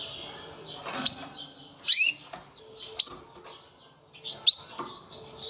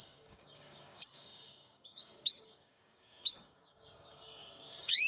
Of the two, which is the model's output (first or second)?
second